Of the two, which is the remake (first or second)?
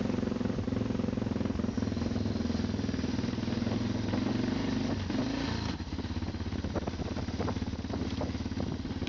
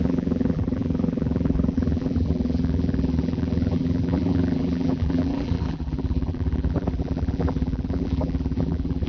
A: second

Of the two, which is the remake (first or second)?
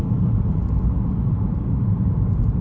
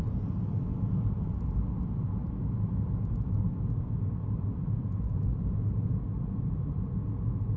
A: first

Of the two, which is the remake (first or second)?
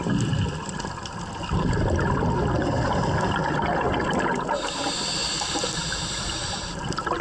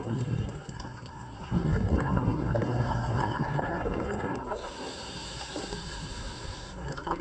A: second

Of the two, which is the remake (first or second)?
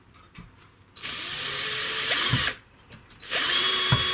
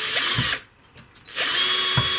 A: first